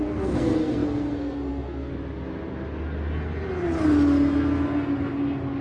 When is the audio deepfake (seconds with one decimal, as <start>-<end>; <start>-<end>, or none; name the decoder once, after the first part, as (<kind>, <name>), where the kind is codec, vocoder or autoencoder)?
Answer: 0.0-1.9 (codec, SNAC)